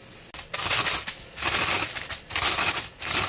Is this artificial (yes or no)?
no